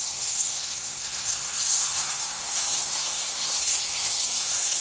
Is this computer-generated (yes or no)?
yes